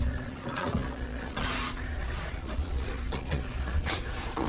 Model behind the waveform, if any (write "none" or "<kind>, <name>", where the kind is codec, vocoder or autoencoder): vocoder, Vocos